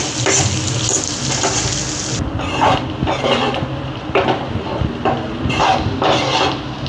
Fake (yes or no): no